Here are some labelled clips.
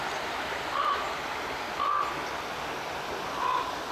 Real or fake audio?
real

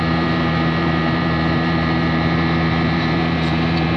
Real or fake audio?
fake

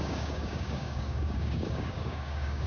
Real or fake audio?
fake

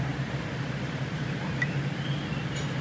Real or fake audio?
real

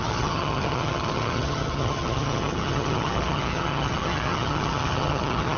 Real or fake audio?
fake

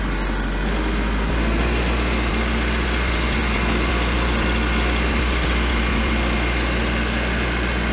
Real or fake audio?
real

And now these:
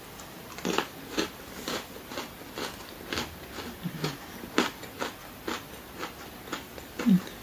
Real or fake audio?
real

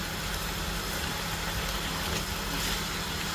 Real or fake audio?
real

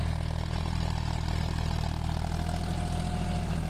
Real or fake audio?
real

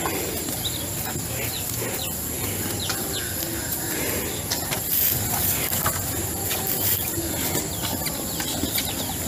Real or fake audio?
real